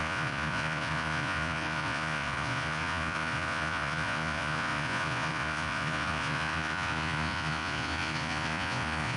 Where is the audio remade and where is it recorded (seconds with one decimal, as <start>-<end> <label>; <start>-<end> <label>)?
0.0-9.2 remade